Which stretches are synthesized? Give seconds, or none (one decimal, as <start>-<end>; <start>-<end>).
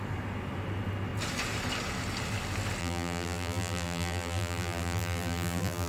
2.8-5.9